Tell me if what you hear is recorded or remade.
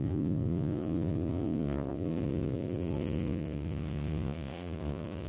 remade